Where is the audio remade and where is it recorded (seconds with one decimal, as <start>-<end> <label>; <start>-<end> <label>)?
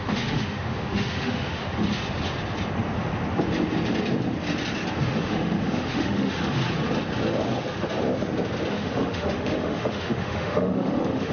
0.0-1.6 remade; 1.6-5.0 recorded; 5.0-6.6 remade; 6.6-8.7 recorded; 8.7-11.3 remade